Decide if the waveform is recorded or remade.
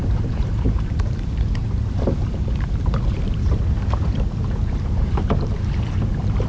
remade